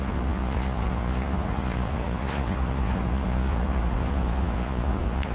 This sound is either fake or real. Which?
fake